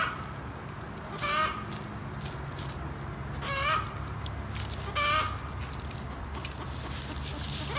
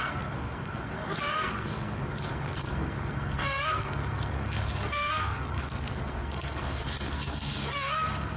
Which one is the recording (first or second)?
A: first